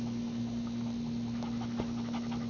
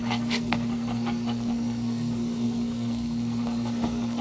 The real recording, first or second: first